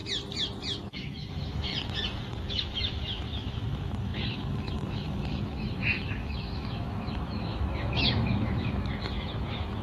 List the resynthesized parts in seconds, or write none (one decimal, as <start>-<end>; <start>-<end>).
0.8-1.7; 2.5-9.8